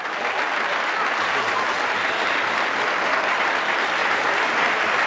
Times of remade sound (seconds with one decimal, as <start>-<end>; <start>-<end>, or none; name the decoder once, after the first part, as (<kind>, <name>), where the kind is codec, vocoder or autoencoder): none